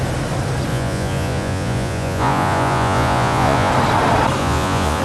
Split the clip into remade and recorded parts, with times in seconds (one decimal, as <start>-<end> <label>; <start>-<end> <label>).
0.0-0.7 recorded; 0.7-3.7 remade; 3.7-4.4 recorded; 4.4-5.0 remade